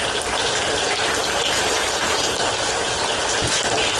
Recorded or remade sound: recorded